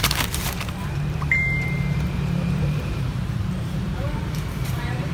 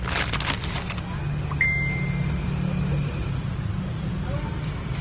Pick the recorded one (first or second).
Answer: second